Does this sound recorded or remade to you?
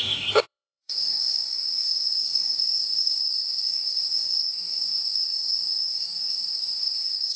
remade